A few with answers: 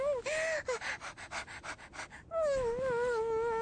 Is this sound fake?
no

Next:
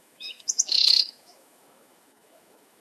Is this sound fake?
yes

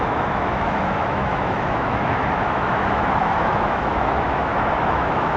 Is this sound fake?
yes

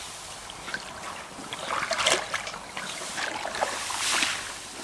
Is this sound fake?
no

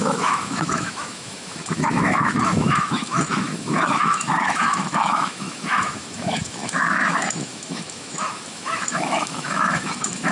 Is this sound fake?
yes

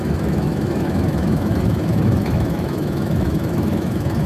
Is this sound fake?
yes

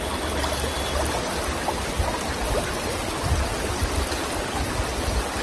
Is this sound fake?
no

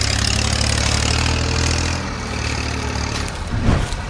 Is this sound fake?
no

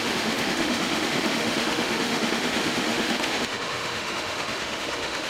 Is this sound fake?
yes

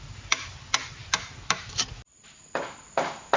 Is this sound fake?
no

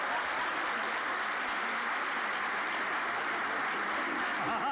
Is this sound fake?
no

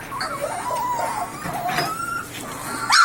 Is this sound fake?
no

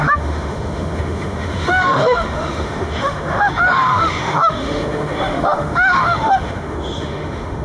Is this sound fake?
yes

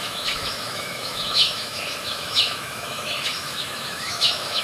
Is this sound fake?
yes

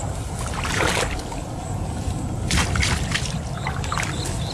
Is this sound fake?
no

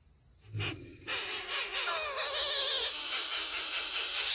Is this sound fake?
no